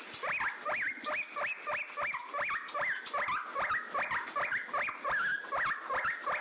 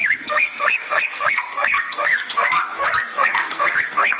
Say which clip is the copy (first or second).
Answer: second